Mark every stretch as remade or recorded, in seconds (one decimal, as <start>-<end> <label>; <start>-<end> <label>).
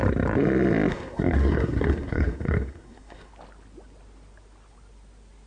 0.0-0.9 recorded; 0.9-3.3 remade; 3.3-5.5 recorded